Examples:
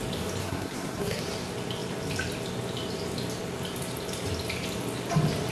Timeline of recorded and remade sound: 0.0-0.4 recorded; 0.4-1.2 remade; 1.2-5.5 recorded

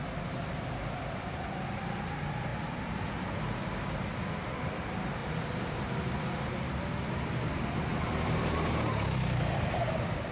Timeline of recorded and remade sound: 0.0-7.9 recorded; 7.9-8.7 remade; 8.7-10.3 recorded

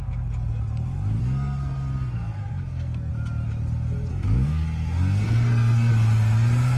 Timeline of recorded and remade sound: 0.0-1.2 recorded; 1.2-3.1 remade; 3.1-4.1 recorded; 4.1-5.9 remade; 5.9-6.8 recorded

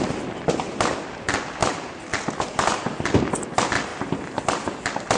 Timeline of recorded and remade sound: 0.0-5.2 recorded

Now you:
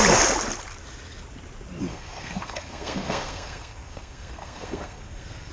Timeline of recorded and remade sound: 0.0-1.9 recorded; 1.9-5.5 remade

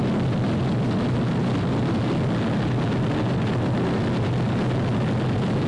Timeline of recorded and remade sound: 0.0-5.7 recorded

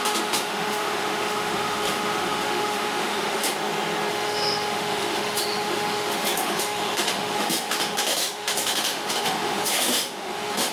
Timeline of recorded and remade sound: 0.0-3.5 remade; 3.5-4.1 recorded; 4.1-10.7 remade

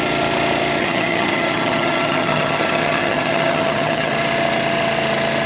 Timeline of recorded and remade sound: 0.0-0.8 recorded; 0.8-4.1 remade; 4.1-5.5 recorded